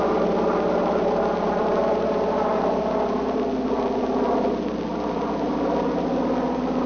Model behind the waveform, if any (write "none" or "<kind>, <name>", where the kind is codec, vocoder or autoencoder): none